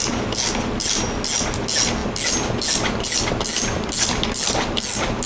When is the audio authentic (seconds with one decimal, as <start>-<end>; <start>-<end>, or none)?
0.0-5.3